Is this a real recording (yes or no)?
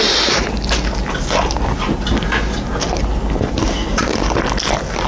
yes